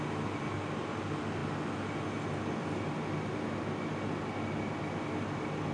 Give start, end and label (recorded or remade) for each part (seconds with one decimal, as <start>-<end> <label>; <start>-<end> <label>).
0.0-5.7 recorded